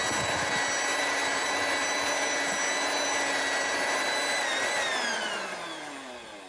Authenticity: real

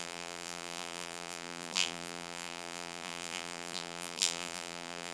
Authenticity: fake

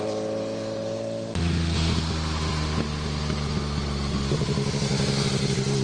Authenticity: real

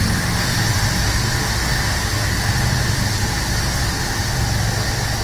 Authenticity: real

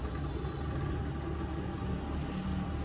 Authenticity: real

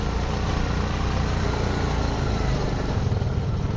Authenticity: real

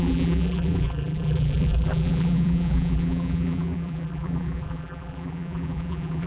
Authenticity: fake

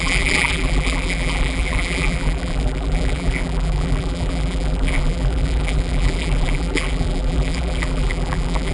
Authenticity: fake